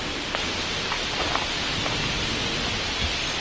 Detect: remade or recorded recorded